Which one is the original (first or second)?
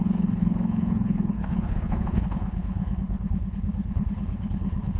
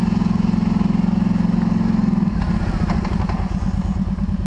second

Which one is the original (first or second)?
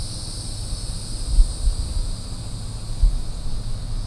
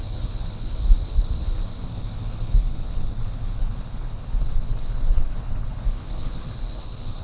first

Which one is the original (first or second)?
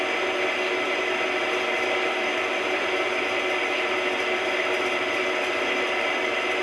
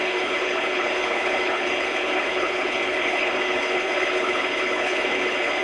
first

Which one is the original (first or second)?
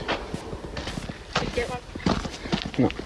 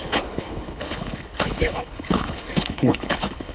first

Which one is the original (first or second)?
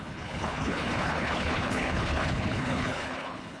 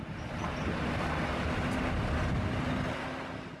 second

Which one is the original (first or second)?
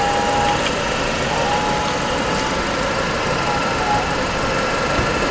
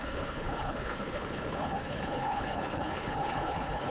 first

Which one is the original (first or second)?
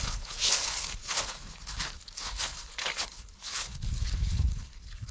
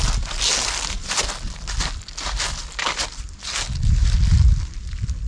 second